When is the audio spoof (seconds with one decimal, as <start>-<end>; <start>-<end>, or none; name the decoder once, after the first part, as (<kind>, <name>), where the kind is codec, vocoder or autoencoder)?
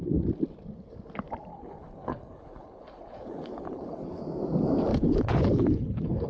1.5-4.2 (codec, HILCodec); 4.9-6.3